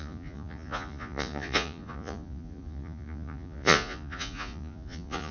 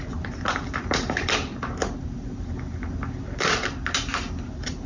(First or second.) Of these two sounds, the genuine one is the second